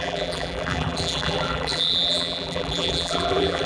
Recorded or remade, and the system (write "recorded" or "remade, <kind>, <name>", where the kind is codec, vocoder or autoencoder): remade, vocoder, BigVGAN v2